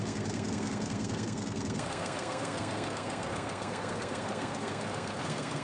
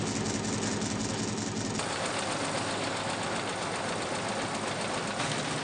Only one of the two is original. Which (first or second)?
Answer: second